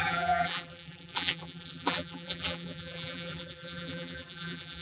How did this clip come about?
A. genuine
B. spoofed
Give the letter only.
B